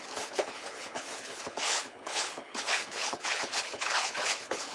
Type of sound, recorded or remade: remade